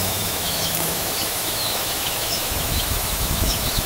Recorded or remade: remade